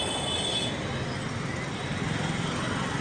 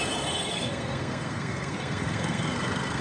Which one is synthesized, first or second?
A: second